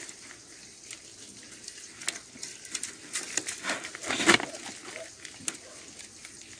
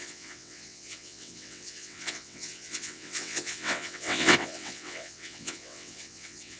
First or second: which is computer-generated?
second